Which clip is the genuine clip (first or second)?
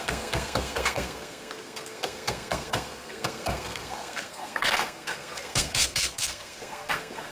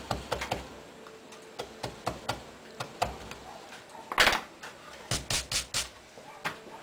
second